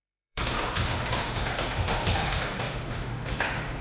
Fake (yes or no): yes